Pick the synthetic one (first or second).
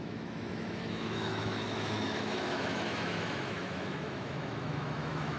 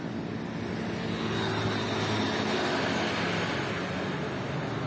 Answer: first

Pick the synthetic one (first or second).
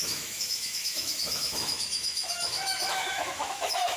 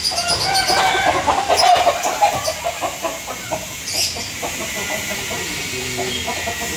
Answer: first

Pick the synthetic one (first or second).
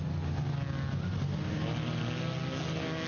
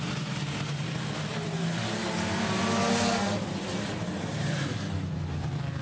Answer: second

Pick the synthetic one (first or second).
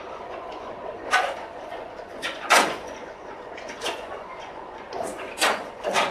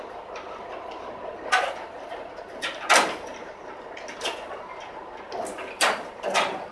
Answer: first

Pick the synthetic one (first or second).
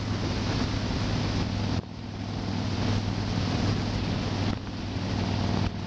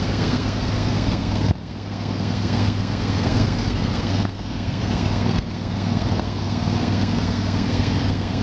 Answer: second